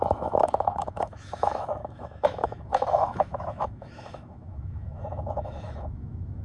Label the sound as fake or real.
fake